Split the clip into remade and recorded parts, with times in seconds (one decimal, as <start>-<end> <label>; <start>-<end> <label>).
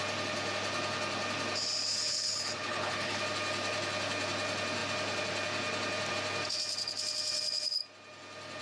0.0-1.9 recorded; 1.9-3.2 remade; 3.2-8.6 recorded